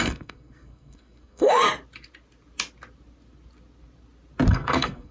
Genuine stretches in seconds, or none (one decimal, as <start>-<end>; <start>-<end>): 1.6-4.5